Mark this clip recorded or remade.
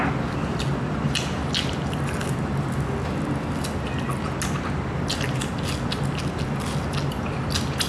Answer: recorded